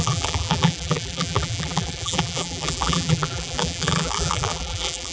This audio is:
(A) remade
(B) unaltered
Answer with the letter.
A